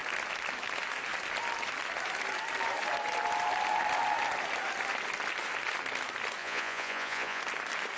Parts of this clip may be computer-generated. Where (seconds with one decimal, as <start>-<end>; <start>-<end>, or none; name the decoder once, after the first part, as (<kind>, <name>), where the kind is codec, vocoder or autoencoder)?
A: 6.4-7.4 (vocoder, Vocos)